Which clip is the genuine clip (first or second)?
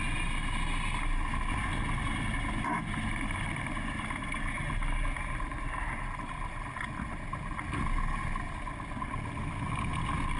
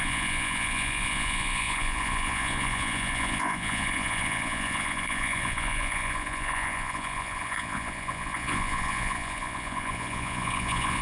first